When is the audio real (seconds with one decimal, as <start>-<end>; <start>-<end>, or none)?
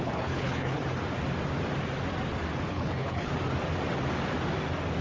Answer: 0.8-2.7; 3.3-5.0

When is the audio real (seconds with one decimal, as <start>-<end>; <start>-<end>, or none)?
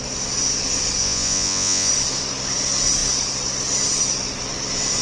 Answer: 0.0-1.0; 1.9-5.0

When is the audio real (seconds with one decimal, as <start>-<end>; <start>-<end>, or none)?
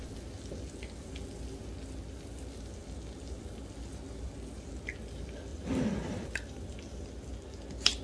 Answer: 0.0-5.5; 7.3-8.0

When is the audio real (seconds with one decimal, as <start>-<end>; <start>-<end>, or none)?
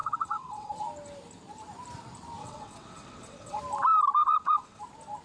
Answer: 0.7-2.4; 3.6-4.2; 4.8-5.2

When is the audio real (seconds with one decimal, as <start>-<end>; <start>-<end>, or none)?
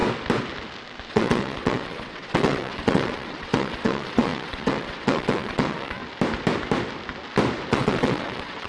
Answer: 0.0-1.1; 6.0-7.7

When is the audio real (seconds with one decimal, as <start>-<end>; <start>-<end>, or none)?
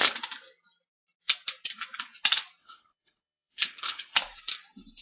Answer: 0.0-2.6; 4.1-5.0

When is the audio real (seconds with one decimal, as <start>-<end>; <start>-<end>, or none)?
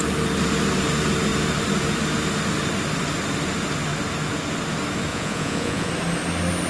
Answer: 0.0-5.1; 5.9-6.7